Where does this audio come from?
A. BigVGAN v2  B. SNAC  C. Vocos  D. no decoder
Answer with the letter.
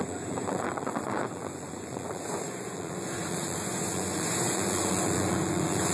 C